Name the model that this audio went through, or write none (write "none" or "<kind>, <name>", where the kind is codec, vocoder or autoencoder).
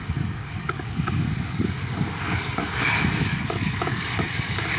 codec, DAC